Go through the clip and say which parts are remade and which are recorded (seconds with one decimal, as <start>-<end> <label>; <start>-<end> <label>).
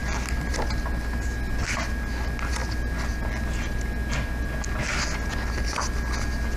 0.0-6.6 recorded